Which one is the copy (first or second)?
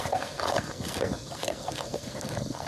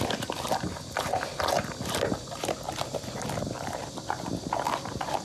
first